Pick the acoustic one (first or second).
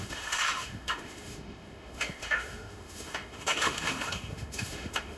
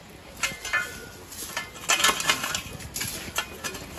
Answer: second